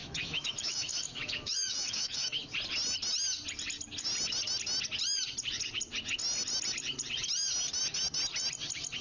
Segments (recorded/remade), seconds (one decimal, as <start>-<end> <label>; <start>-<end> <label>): 0.0-2.5 remade; 2.5-9.0 recorded